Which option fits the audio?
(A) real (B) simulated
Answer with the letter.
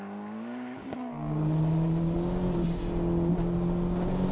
A